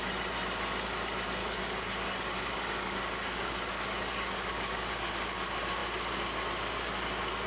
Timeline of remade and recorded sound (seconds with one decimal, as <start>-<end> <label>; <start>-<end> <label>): 0.0-1.4 recorded; 1.4-5.1 remade; 5.1-7.5 recorded